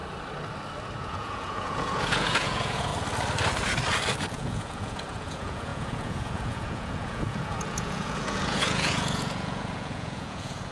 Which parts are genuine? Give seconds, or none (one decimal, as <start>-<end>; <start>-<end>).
0.0-1.0; 2.9-4.3

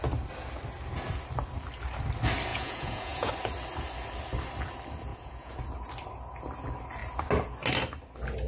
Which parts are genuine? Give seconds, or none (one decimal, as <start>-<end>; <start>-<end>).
0.0-2.5; 3.3-5.1; 5.6-8.5

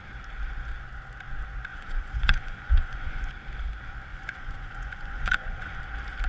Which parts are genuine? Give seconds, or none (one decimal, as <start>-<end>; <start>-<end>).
0.0-1.7; 3.3-4.1; 5.8-6.3

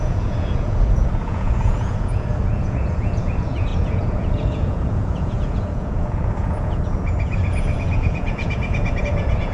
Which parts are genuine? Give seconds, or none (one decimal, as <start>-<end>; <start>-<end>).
none

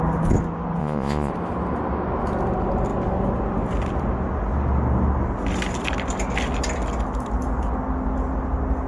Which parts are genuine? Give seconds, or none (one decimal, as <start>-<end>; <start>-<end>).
0.0-0.8; 1.3-8.9

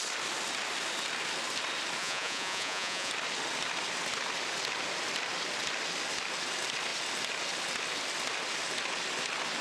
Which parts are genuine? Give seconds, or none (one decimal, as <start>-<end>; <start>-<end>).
0.0-2.0; 3.1-9.6